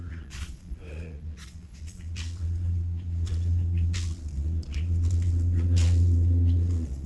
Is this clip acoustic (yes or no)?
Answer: no